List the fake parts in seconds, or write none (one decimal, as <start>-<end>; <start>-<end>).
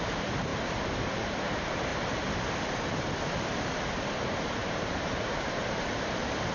0.0-0.5; 1.4-1.9; 3.6-6.5